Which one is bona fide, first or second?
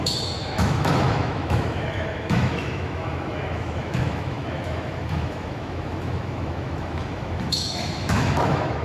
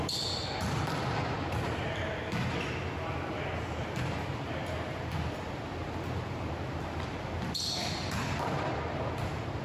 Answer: second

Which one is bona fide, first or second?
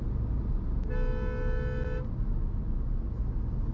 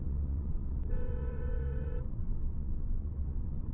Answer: first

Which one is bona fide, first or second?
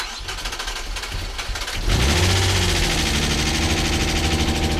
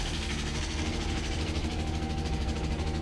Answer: first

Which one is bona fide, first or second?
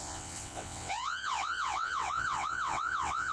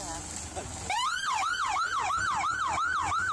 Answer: second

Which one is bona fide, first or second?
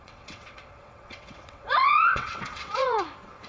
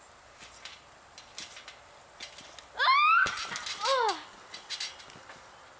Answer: second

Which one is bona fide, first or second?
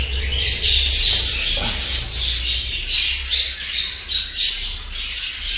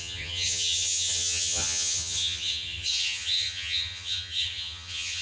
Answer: first